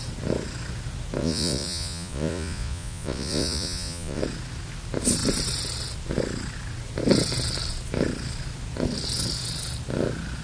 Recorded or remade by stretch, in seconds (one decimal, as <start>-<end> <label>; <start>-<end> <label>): 0.0-1.2 recorded; 1.2-4.2 remade; 4.2-10.4 recorded